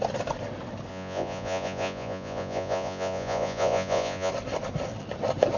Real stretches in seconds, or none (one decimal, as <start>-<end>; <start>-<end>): 0.0-0.9; 4.3-5.6